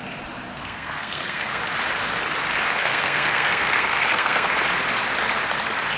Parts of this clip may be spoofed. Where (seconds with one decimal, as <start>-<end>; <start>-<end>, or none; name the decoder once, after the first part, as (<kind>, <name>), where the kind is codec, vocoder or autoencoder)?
0.5-1.6 (codec, SNAC); 2.8-4.5